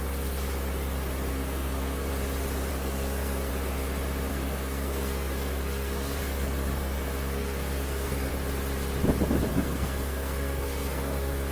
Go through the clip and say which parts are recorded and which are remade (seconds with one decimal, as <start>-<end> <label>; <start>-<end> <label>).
0.0-1.3 recorded; 1.3-2.1 remade; 2.1-2.7 recorded; 2.7-3.5 remade; 3.5-4.3 recorded; 4.3-8.3 remade; 8.3-9.5 recorded; 9.5-11.5 remade